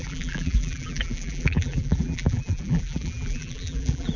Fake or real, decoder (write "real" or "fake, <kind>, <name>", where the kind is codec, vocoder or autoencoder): fake, vocoder, BigVGAN v2